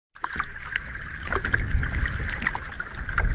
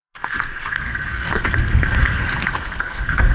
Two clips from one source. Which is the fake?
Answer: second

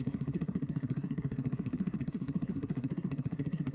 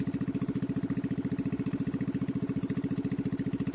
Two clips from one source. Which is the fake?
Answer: first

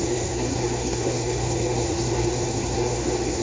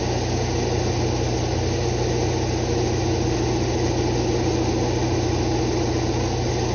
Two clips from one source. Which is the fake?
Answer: first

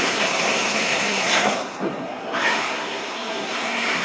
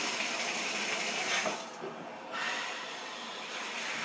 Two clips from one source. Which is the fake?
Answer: first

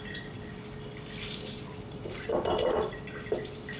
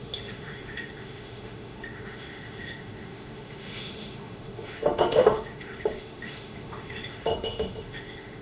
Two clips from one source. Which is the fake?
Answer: second